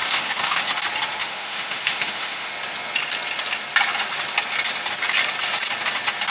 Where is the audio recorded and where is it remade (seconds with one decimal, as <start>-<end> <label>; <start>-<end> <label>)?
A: 0.0-0.7 remade; 0.7-1.2 recorded; 1.2-2.5 remade; 2.5-6.3 recorded